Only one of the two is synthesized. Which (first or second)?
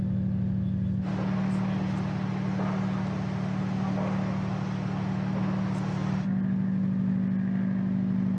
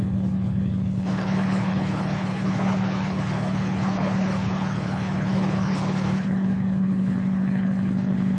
second